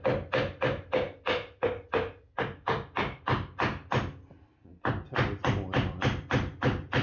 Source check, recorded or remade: recorded